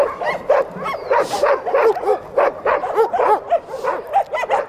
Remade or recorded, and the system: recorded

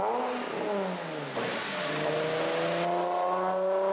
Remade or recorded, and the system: recorded